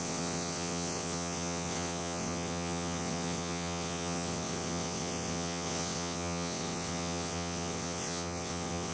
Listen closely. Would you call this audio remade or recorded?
remade